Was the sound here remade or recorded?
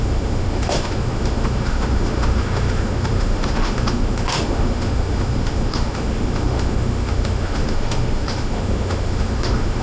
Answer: remade